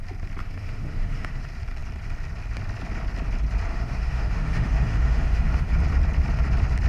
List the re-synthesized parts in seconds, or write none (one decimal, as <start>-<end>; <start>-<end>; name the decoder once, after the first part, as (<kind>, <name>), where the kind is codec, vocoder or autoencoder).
0.4-1.4 (autoencoder, DAC-VAE); 3.7-5.7